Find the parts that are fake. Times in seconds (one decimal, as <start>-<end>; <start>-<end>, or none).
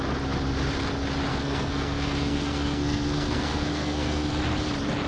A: 1.3-4.4